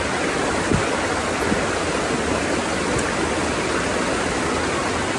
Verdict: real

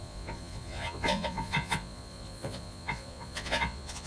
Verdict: fake